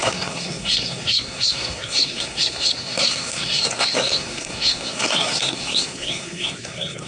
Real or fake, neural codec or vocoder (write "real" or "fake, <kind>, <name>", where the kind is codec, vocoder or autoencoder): fake, codec, SNAC